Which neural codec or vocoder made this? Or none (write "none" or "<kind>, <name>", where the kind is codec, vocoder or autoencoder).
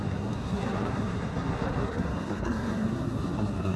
codec, SNAC